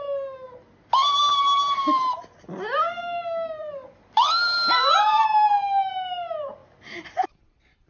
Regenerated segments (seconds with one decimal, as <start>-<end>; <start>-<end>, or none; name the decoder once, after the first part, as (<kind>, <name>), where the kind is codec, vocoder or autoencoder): 3.6-4.3 (vocoder, BigVGAN v2)